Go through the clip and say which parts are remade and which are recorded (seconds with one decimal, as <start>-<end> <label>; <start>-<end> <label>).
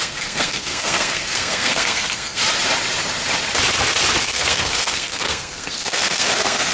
0.0-2.4 remade; 2.4-4.2 recorded; 4.2-6.7 remade